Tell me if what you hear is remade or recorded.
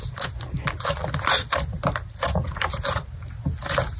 recorded